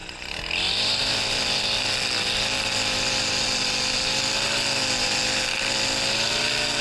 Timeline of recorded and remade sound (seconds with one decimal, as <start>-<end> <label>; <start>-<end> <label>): 0.0-6.8 recorded